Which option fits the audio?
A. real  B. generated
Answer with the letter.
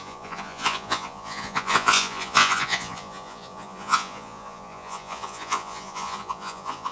B